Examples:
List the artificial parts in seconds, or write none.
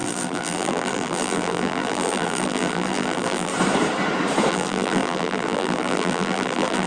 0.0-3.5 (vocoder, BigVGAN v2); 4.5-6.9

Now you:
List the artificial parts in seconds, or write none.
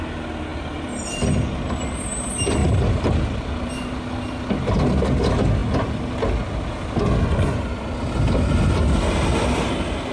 2.6-4.0 (vocoder, BigVGAN v2)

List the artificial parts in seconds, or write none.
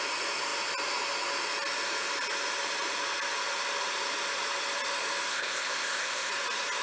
5.3-6.3 (codec, ZipCodec)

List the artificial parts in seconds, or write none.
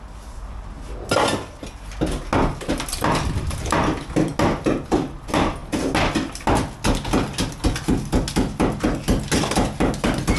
none